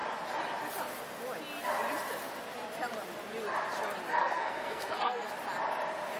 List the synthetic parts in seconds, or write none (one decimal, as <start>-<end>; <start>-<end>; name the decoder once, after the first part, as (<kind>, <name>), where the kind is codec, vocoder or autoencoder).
4.2-5.3 (codec, SNAC)